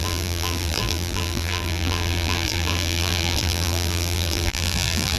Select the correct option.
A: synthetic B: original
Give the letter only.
A